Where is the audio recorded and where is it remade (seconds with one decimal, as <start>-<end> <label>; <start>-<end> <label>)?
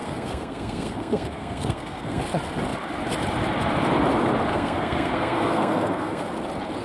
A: 0.0-2.2 remade; 2.2-4.5 recorded; 4.5-6.3 remade; 6.3-6.8 recorded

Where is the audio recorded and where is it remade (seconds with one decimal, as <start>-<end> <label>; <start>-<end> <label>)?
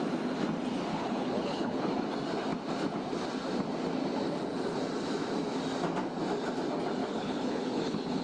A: 0.0-0.9 recorded; 0.9-1.9 remade; 1.9-7.0 recorded; 7.0-8.2 remade